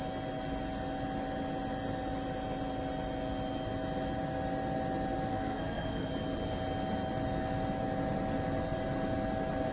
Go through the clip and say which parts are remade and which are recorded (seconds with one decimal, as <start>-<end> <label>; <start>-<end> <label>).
0.0-5.3 recorded; 5.3-6.1 remade; 6.1-9.7 recorded